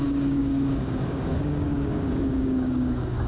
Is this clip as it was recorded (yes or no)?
no